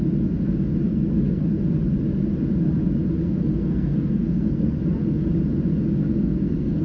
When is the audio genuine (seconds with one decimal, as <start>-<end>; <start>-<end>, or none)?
0.0-0.9; 1.4-3.2; 4.8-6.0